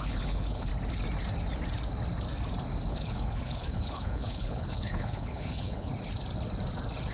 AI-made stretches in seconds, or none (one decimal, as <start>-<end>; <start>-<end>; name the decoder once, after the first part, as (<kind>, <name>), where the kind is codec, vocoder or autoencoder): 0.0-0.7 (codec, HILCodec); 2.9-5.9

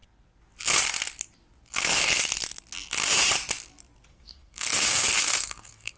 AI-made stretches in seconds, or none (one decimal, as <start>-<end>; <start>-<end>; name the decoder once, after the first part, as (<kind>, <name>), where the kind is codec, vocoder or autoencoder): 4.1-6.0 (codec, SNAC)

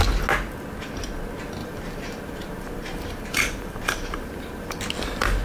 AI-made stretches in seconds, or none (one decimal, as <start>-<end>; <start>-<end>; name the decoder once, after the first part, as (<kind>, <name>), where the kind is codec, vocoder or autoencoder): 1.6-4.8 (vocoder, BigVGAN v2)

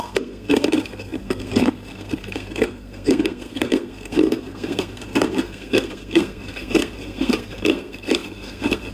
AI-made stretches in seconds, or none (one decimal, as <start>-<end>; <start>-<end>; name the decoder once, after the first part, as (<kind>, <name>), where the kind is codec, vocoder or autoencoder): 0.0-8.9 (codec, SNAC)

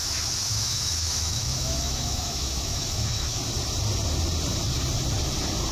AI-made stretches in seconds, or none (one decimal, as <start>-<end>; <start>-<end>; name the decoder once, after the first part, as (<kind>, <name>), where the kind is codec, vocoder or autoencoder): 0.0-3.4 (autoencoder, DAC-VAE)

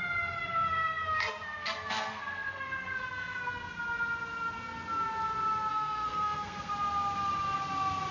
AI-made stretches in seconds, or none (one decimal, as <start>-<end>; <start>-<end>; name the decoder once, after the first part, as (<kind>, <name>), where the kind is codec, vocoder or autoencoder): 0.4-3.5 (codec, SNAC); 5.7-6.7

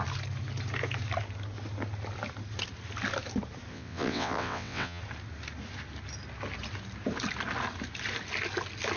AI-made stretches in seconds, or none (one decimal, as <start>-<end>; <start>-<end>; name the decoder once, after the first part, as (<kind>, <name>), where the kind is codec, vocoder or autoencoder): 3.7-5.0 (vocoder, WaveNeXt)